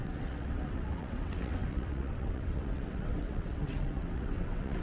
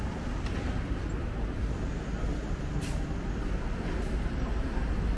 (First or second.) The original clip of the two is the second